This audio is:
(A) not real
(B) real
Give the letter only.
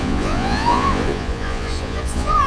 A